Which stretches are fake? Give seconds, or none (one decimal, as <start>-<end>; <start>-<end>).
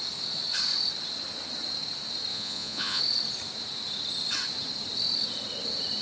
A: 2.3-3.0